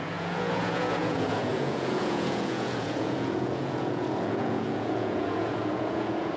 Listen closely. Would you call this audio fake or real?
fake